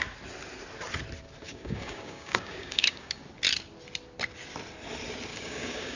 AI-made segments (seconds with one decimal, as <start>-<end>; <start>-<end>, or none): 1.4-3.2; 5.3-6.0

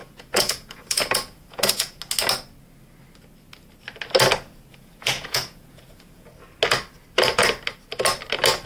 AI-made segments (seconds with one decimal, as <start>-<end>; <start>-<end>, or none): 0.0-2.0; 4.7-6.3

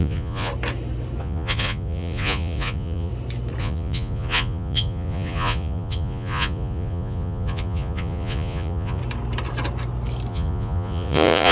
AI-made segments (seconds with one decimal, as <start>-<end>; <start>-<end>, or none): 0.0-0.5; 1.2-3.1; 3.6-9.0; 10.3-11.5

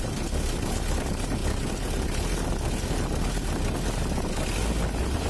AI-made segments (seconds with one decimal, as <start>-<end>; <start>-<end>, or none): none

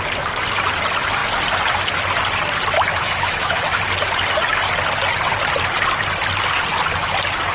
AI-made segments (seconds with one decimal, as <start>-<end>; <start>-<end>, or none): 2.9-3.8